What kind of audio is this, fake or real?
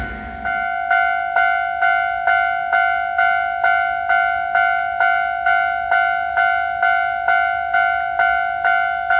real